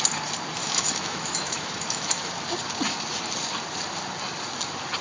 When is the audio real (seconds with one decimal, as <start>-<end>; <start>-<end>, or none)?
0.0-0.6; 2.3-5.0